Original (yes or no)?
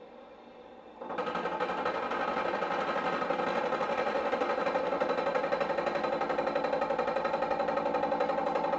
yes